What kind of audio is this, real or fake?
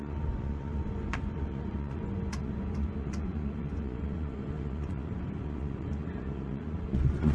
fake